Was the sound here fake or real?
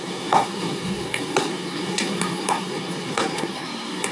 fake